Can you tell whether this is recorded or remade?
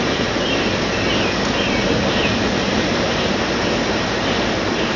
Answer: remade